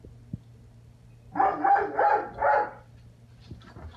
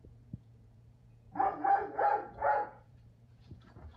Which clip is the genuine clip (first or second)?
first